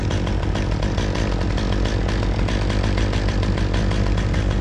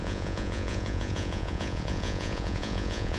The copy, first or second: second